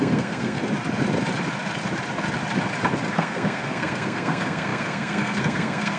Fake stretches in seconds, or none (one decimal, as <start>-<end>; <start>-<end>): 0.0-0.6; 3.1-6.0